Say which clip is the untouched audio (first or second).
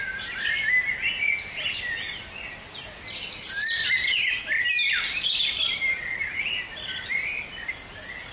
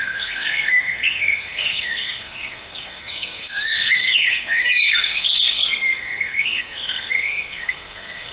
first